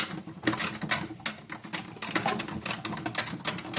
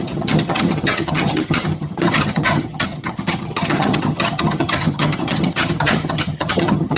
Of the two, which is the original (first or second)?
first